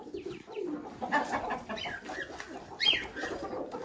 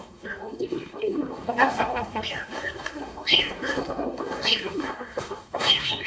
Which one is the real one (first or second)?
first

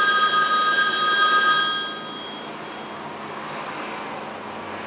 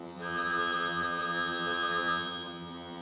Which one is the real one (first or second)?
first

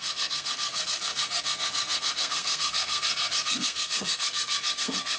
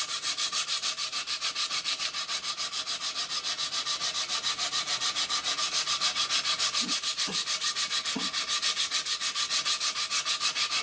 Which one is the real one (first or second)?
second